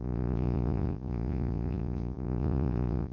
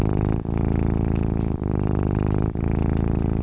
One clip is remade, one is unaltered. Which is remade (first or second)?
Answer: first